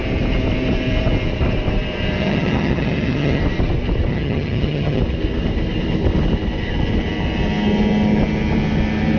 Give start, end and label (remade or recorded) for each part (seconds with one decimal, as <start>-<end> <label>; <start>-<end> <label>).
0.0-2.2 recorded; 2.2-3.4 remade; 3.4-4.1 recorded; 4.1-5.0 remade; 5.0-9.2 recorded